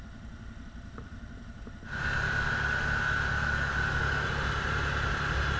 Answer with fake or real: real